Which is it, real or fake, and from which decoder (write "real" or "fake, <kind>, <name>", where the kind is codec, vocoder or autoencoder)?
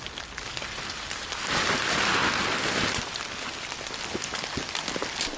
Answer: real